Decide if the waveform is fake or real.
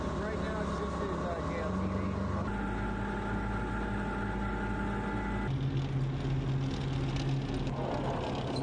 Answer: real